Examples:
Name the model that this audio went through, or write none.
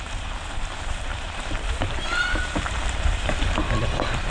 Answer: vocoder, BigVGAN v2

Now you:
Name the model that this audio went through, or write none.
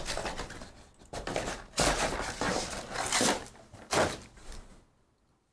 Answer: none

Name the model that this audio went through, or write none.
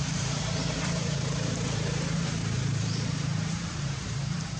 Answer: vocoder, BigVGAN v2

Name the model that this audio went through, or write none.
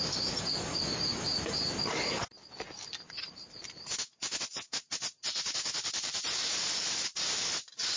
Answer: vocoder, BigVGAN v2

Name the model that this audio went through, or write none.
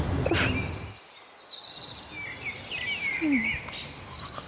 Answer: none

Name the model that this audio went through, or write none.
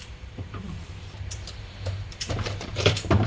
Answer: vocoder, BigVGAN v2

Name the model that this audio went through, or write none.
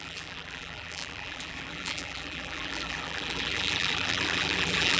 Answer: vocoder, BigVGAN v2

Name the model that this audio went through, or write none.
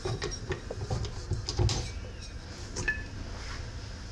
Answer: none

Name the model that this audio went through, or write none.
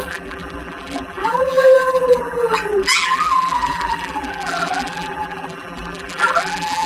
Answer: vocoder, BigVGAN v2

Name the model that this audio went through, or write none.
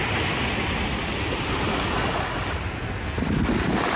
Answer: none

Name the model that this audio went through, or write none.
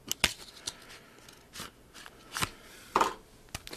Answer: none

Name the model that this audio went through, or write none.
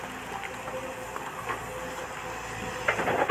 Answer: none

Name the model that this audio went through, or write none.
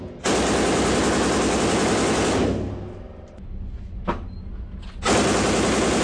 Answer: none